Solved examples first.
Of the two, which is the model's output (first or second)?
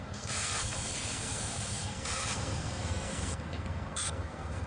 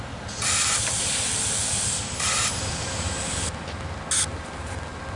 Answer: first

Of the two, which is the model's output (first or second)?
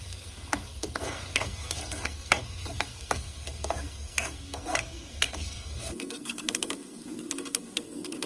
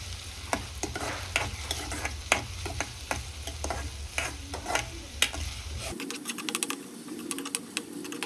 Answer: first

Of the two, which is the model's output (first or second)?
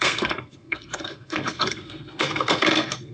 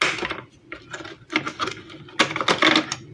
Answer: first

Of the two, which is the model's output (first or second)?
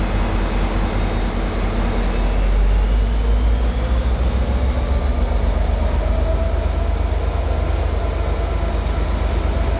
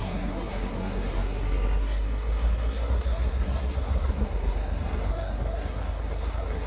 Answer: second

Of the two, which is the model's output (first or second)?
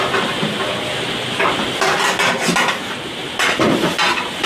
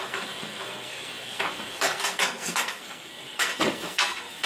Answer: second